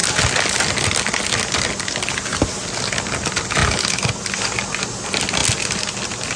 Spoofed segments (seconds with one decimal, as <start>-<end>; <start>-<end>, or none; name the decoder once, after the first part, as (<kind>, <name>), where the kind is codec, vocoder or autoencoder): none